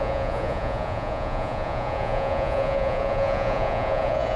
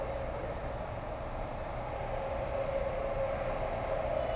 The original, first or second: second